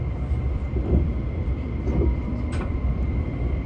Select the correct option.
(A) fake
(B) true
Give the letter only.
A